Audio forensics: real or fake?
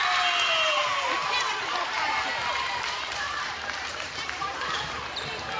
fake